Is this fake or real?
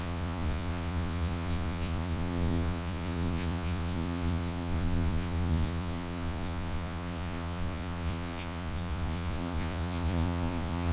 fake